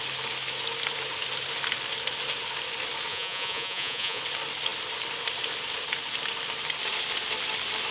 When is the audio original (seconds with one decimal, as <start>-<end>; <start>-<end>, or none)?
0.0-3.1; 4.2-7.9